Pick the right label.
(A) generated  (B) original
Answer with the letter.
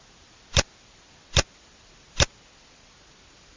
B